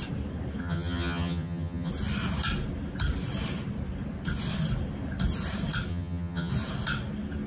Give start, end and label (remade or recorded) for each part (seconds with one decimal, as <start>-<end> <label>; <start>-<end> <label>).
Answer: 0.0-0.6 recorded; 0.6-1.9 remade; 1.9-5.9 recorded; 5.9-6.5 remade; 6.5-7.5 recorded